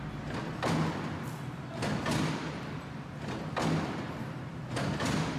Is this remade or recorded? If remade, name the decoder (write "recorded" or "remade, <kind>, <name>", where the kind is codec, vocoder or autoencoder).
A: recorded